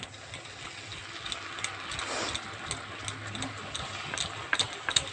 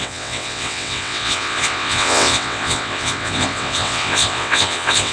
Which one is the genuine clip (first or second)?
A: first